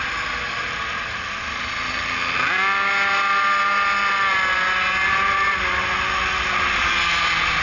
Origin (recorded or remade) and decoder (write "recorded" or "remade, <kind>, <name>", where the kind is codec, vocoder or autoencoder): recorded